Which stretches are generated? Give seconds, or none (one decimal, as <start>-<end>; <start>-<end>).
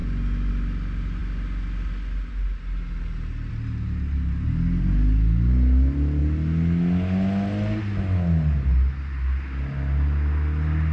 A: none